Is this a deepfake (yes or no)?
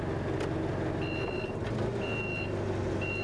no